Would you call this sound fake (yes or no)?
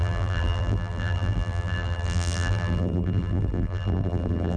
yes